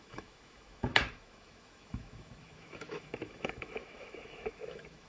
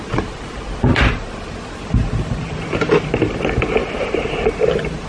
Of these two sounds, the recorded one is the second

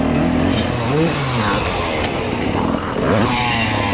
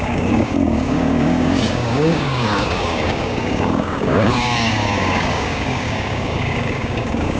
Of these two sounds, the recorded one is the first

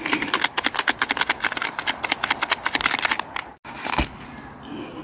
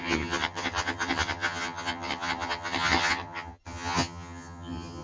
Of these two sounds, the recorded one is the first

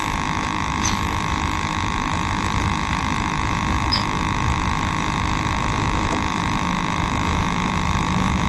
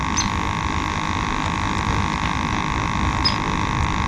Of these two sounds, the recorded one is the second